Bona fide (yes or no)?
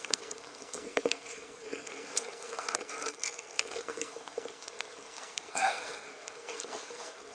no